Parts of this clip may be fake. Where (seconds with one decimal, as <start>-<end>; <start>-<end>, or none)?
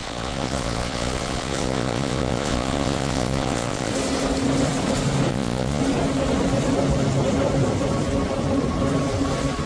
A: 0.0-3.9; 5.3-5.8